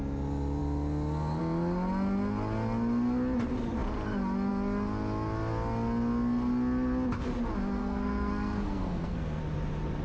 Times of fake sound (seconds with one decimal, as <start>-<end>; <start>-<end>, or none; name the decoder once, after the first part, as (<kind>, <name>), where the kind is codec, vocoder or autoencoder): 7.8-9.4 (codec, SNAC)